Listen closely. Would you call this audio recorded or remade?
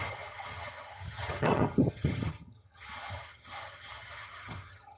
remade